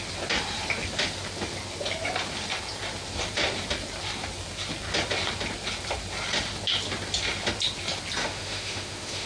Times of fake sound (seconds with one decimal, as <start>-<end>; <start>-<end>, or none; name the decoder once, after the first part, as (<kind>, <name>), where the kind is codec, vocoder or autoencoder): 8.2-9.3 (autoencoder, DAC-VAE)